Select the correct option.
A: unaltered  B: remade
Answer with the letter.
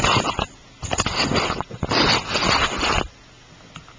A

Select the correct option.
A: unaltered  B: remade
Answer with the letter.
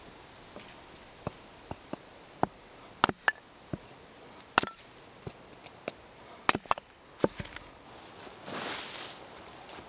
A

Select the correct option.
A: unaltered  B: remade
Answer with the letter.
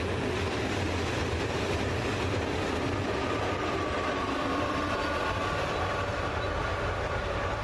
A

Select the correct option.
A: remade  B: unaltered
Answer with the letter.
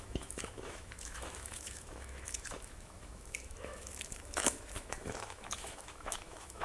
A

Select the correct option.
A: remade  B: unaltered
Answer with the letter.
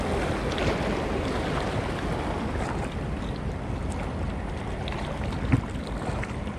B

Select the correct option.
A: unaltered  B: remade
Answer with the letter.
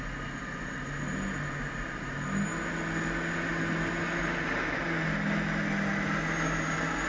A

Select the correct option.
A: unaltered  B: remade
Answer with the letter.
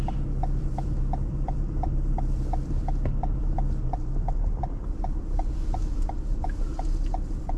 B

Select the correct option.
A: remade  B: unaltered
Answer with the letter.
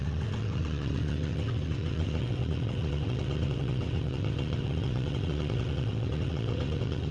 A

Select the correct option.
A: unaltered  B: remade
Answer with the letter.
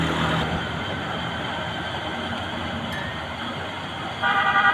A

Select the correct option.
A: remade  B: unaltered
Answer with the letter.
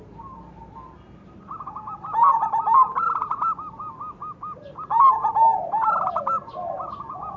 B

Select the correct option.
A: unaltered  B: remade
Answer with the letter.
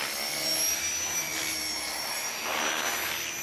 A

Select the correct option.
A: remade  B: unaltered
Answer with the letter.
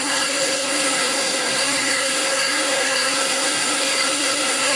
A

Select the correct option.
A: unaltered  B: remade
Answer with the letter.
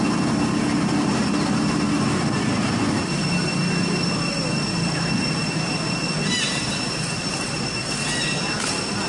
A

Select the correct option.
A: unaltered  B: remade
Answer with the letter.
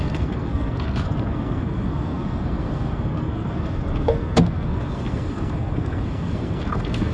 B